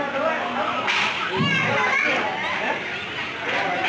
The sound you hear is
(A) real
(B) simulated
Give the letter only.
A